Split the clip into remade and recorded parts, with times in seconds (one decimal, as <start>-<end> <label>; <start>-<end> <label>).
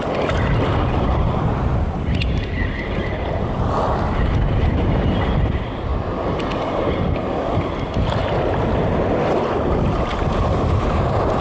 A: 0.0-11.4 recorded